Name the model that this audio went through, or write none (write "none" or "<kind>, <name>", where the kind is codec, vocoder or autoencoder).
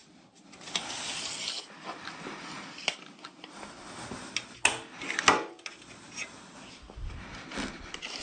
none